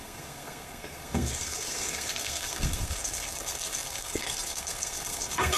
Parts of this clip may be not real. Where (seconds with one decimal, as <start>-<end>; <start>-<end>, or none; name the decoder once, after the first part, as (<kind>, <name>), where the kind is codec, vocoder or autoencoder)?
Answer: 0.0-5.6 (codec, SNAC)